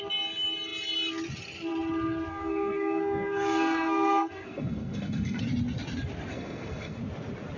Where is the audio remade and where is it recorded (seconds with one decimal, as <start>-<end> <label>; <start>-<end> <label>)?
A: 0.0-2.3 recorded; 2.3-5.4 remade; 5.4-6.3 recorded; 6.3-7.0 remade; 7.0-7.6 recorded